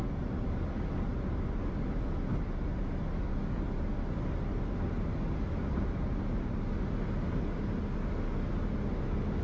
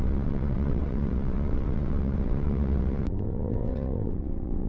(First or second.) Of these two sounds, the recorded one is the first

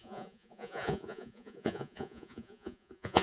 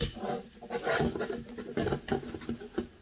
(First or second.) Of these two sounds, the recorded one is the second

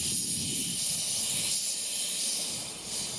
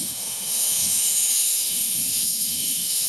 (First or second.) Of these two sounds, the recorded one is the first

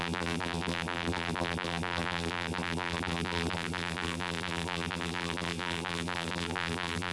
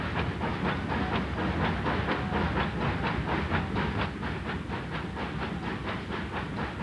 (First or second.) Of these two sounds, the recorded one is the second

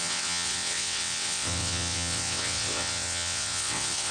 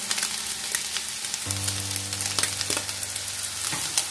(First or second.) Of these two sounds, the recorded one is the second